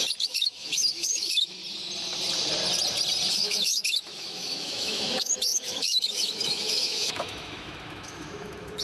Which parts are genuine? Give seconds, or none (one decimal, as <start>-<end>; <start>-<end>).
1.6-3.3